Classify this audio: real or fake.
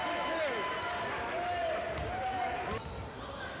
real